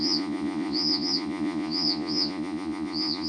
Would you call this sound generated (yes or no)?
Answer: yes